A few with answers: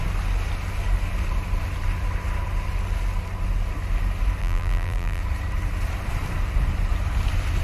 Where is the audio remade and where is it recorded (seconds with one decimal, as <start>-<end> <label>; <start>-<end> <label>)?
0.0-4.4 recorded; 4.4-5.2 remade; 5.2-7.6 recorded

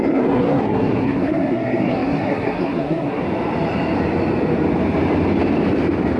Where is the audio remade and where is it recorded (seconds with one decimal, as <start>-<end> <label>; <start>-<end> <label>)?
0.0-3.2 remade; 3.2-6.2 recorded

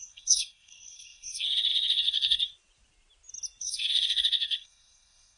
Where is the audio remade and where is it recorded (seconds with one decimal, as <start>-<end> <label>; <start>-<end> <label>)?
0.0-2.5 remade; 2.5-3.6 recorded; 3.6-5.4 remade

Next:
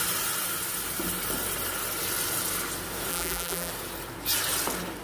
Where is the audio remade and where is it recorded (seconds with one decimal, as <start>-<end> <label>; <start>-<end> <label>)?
0.0-3.1 recorded; 3.1-3.7 remade; 3.7-5.0 recorded

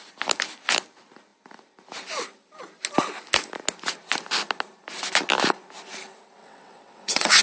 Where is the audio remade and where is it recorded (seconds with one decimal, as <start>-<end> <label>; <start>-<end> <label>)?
0.0-6.4 recorded; 6.4-7.4 remade

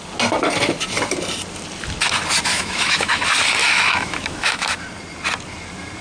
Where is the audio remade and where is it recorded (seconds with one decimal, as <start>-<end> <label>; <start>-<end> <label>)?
0.0-2.5 recorded; 2.5-3.2 remade; 3.2-3.6 recorded; 3.6-4.8 remade; 4.8-6.0 recorded